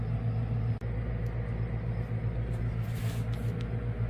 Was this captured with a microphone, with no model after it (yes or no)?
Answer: yes